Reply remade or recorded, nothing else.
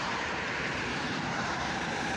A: remade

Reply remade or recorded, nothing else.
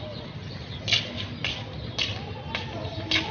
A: recorded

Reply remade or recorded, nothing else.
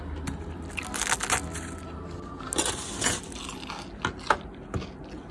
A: recorded